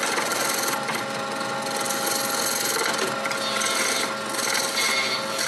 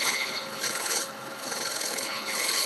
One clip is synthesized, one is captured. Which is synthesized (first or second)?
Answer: second